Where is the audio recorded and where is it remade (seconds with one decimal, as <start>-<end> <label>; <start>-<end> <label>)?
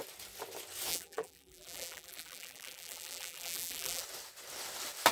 0.0-0.9 recorded; 0.9-4.0 remade; 4.0-5.1 recorded